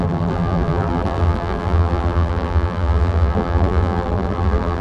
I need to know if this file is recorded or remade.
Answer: remade